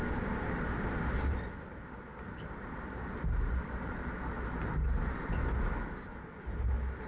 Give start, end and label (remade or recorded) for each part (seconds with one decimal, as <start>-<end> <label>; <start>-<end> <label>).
0.0-7.1 recorded